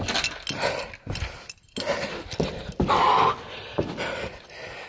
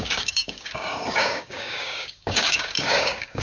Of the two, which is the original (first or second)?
first